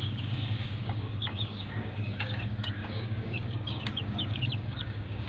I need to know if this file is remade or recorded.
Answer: remade